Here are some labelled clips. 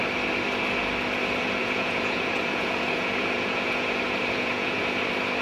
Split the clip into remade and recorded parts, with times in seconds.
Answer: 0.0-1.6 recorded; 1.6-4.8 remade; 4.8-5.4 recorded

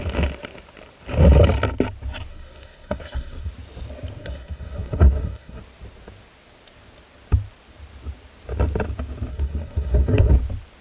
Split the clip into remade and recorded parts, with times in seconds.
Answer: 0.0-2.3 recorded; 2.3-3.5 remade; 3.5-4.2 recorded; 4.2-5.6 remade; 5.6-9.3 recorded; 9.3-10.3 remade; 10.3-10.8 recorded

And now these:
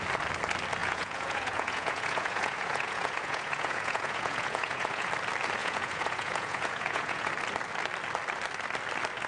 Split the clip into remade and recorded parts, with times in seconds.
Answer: 0.0-0.8 recorded; 0.8-5.1 remade; 5.1-5.6 recorded; 5.6-7.3 remade; 7.3-9.3 recorded